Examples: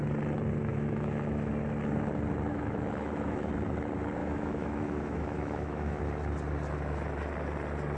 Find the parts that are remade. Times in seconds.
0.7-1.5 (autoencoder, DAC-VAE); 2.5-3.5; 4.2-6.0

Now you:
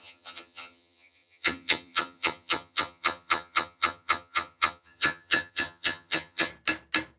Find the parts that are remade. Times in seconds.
0.0-6.5 (vocoder, HiFi-GAN)

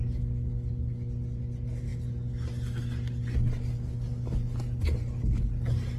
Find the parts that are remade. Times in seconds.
none